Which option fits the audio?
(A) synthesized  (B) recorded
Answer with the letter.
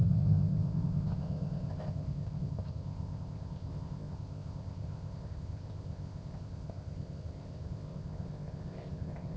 A